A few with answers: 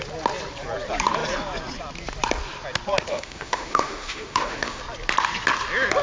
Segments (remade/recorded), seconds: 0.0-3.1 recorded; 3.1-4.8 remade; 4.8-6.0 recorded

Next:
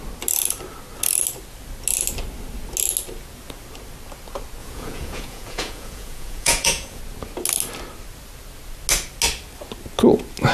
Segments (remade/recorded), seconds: 0.0-4.6 recorded; 4.6-7.0 remade; 7.0-10.5 recorded